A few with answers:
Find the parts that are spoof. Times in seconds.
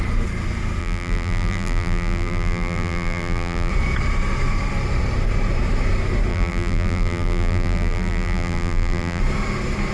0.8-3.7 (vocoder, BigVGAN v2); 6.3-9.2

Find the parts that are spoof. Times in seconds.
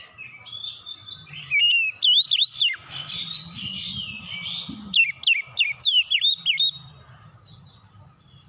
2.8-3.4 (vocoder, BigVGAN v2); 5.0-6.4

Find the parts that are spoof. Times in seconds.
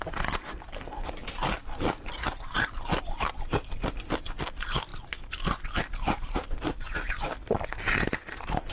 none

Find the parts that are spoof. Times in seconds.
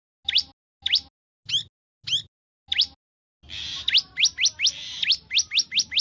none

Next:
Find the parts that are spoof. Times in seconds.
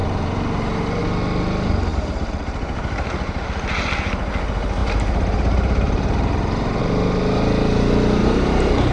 0.0-1.0 (vocoder, BigVGAN v2); 1.9-3.4; 4.8-6.8; 8.2-8.9